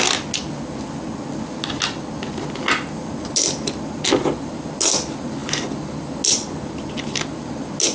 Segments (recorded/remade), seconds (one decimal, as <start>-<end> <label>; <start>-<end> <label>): 0.0-7.9 recorded